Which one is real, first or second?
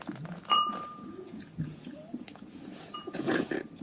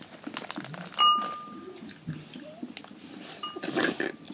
second